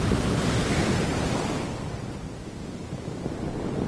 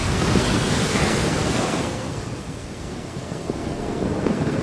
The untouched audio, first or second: first